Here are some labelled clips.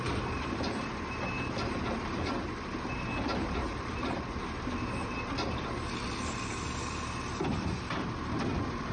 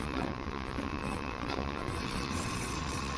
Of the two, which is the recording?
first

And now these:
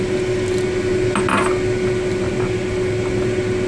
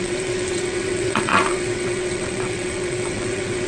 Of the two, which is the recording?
first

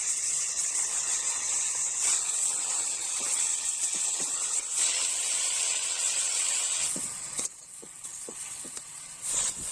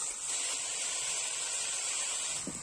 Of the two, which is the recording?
second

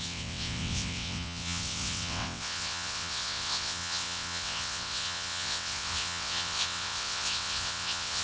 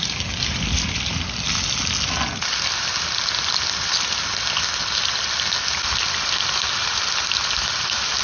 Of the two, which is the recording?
second